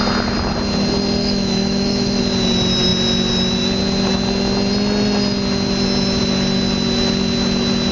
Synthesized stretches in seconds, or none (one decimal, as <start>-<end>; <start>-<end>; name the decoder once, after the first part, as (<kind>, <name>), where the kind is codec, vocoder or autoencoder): 1.2-2.2 (autoencoder, DAC-VAE)